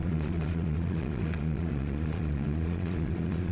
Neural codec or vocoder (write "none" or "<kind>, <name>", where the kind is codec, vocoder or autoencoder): vocoder, Vocos